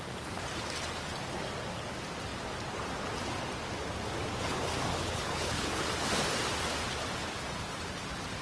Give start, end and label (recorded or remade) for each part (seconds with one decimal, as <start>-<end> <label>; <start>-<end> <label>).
0.0-4.9 recorded; 4.9-5.8 remade; 5.8-8.4 recorded